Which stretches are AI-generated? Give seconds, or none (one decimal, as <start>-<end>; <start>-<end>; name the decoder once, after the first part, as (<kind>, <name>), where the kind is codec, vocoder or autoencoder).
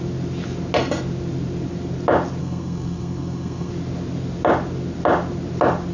2.4-3.7 (codec, SNAC)